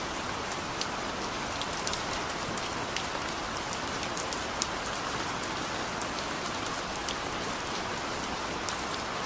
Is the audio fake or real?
real